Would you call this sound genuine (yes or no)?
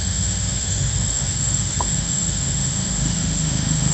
no